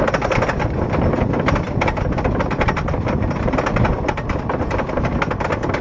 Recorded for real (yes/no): yes